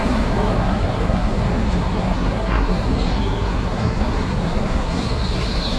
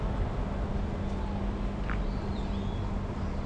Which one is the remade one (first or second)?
first